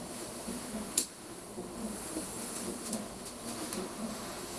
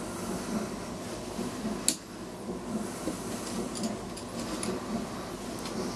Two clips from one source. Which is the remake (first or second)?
first